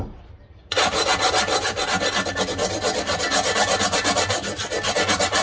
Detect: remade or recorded recorded